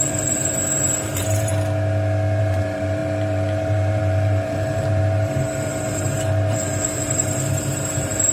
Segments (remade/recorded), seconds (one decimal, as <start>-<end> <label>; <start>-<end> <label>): 0.0-1.5 remade; 1.5-2.4 recorded; 2.4-8.3 remade